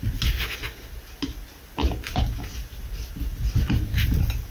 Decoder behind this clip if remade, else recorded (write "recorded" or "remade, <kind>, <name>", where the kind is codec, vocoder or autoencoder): recorded